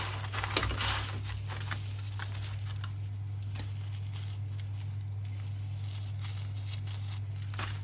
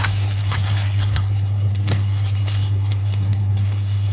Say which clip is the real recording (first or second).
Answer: first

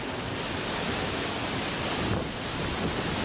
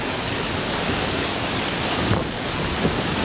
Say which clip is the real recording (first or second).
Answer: first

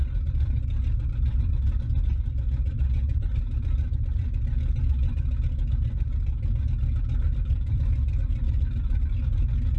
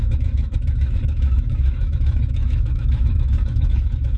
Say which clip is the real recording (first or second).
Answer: first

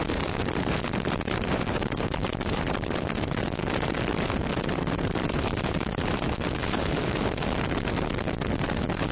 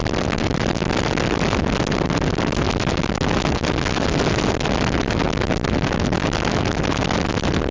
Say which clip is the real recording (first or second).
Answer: second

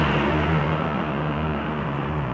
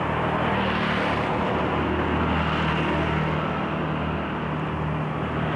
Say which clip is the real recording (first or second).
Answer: second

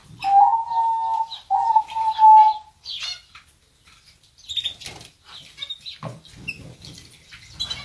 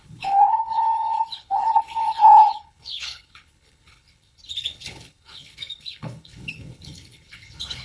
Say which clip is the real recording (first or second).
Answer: first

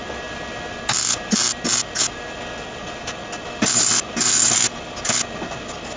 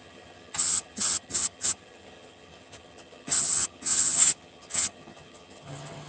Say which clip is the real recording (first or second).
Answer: first